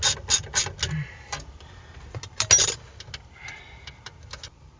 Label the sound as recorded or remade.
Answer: recorded